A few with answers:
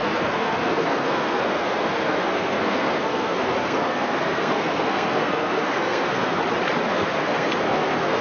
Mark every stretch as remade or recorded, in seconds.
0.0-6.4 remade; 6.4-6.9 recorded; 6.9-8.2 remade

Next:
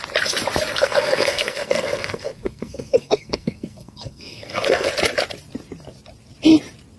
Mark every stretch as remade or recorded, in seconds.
0.0-0.7 recorded; 0.7-4.9 remade; 4.9-7.0 recorded

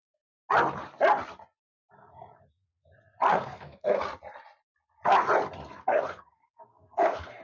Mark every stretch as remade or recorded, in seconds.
0.0-3.3 recorded; 3.3-4.0 remade; 4.0-5.9 recorded; 5.9-7.4 remade

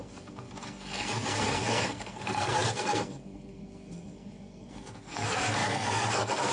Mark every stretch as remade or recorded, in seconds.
0.0-6.5 remade